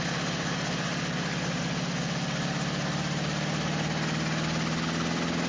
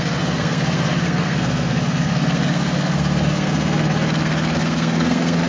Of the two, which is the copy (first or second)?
second